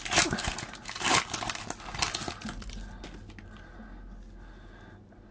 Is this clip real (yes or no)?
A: yes